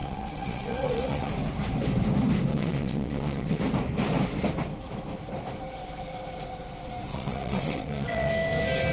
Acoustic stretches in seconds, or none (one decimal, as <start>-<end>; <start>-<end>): 1.3-2.5; 3.6-7.1; 8.3-8.9